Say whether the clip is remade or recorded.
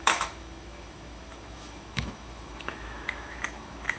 remade